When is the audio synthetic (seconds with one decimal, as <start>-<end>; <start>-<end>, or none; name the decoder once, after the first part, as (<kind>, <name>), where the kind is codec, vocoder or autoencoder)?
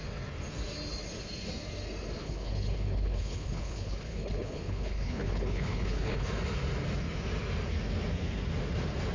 2.2-6.3 (codec, HILCodec)